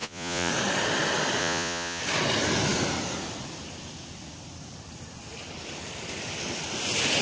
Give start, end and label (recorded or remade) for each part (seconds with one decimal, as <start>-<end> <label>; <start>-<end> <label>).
0.0-0.5 remade; 0.5-1.4 recorded; 1.4-2.0 remade; 2.0-7.2 recorded